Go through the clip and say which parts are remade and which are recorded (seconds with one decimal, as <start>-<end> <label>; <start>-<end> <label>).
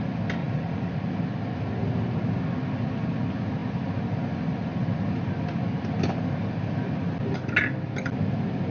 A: 0.0-0.4 recorded; 0.4-0.9 remade; 0.9-8.7 recorded